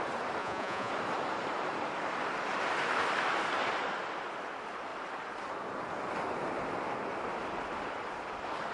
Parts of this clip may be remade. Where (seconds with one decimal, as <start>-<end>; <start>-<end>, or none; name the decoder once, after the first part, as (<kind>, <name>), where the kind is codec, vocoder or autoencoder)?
0.4-0.9 (vocoder, Vocos)